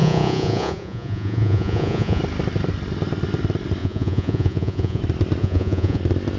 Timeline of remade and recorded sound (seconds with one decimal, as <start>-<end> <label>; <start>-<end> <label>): 0.0-2.2 remade; 2.2-3.8 recorded; 3.8-5.0 remade; 5.0-5.4 recorded; 5.4-6.0 remade; 6.0-6.4 recorded